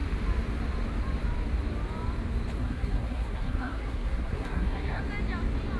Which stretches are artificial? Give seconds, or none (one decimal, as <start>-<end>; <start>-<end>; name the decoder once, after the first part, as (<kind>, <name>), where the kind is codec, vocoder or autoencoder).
2.6-5.0 (codec, SNAC)